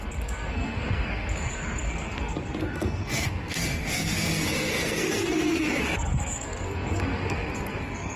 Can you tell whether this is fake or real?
fake